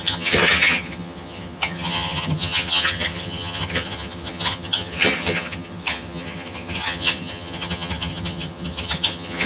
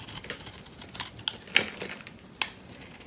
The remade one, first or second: first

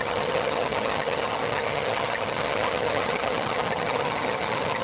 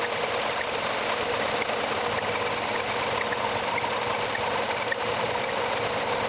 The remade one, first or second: first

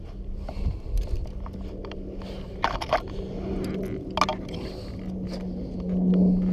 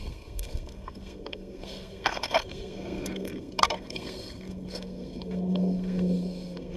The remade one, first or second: second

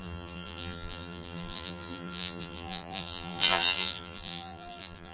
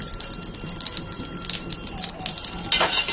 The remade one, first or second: first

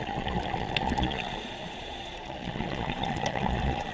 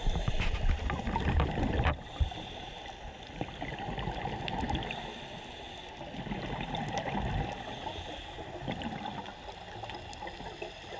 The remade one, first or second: first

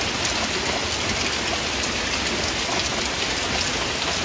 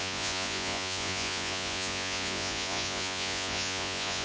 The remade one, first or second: second